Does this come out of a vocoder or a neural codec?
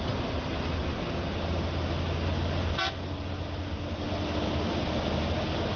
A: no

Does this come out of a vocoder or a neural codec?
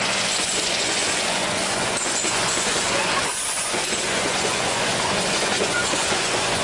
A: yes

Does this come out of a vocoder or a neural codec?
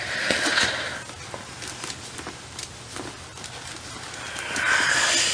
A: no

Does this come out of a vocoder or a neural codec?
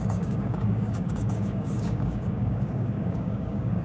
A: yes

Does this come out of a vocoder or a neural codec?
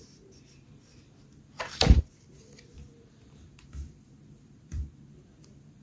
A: yes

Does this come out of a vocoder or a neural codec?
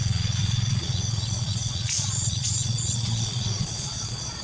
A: yes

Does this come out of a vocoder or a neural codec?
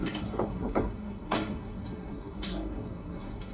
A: yes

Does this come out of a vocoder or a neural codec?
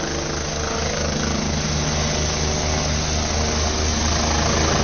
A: no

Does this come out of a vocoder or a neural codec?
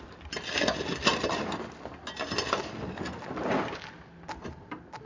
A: no